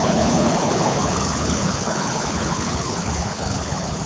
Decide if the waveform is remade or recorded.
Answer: remade